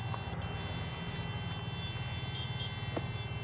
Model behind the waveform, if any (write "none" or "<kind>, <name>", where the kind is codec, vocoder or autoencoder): none